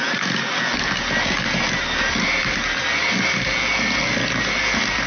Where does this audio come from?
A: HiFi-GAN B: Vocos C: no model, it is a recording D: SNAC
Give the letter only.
C